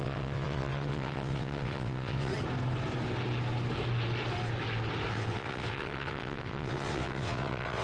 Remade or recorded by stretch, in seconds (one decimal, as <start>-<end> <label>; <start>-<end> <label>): 0.0-2.3 remade; 2.3-5.1 recorded; 5.1-7.8 remade